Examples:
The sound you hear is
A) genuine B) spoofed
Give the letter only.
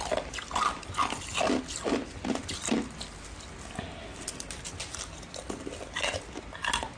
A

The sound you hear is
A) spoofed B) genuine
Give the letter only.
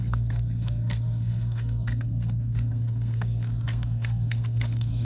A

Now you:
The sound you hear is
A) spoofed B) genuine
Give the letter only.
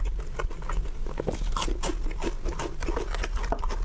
B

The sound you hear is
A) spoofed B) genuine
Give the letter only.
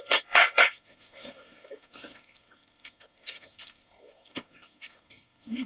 A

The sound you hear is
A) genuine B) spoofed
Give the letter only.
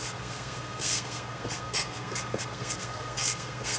B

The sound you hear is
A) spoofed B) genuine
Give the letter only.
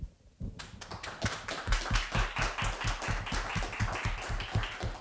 B